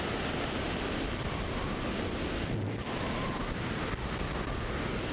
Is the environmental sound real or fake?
real